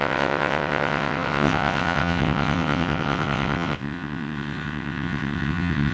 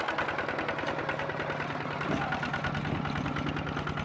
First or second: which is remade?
first